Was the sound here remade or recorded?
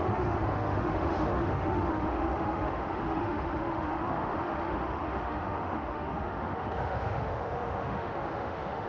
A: remade